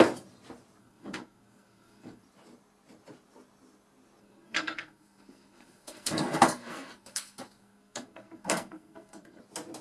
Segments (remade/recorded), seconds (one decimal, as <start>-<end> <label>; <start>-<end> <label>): 0.0-0.8 recorded; 0.8-2.2 remade; 2.2-4.2 recorded; 4.2-9.4 remade; 9.4-9.8 recorded